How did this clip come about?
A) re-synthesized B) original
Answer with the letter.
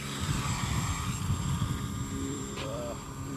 A